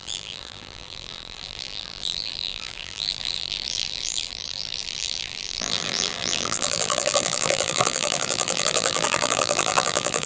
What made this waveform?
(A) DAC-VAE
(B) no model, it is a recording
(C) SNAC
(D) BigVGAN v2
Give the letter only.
D